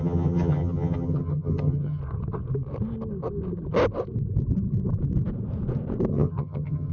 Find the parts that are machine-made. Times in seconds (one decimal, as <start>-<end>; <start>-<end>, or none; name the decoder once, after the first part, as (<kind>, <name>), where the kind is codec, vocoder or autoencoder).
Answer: 0.0-2.0 (vocoder, HiFi-GAN); 6.1-6.9